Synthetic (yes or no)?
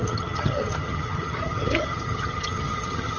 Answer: yes